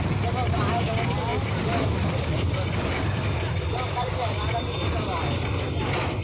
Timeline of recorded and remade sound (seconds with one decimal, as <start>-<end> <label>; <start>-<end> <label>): 0.0-6.2 recorded